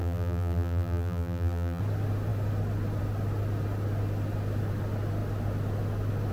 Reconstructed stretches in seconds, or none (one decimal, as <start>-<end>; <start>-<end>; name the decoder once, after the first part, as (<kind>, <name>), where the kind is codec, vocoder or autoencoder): 0.0-1.8 (vocoder, BigVGAN v2)